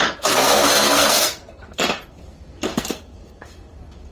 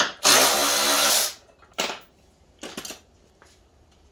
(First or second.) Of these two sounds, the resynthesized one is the first